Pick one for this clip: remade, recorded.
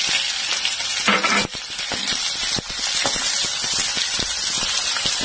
recorded